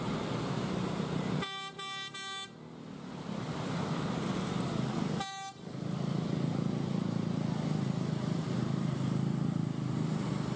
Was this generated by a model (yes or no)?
no